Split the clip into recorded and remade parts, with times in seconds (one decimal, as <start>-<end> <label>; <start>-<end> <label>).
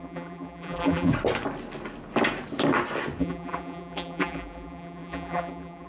0.0-1.1 remade; 1.1-3.2 recorded; 3.2-5.9 remade